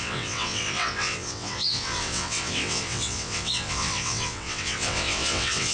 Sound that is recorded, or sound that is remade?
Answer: remade